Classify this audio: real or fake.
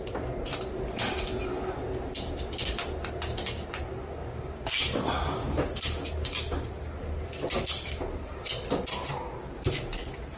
real